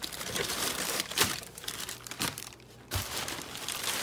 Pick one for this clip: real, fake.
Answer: fake